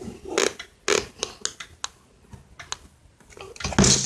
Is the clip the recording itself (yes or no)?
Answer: yes